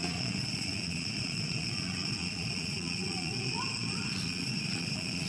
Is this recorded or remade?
remade